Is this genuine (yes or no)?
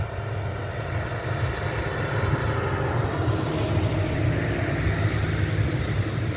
yes